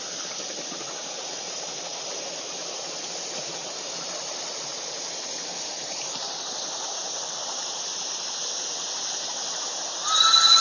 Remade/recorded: recorded